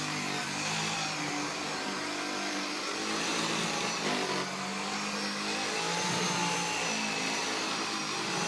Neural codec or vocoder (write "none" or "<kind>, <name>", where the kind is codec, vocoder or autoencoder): none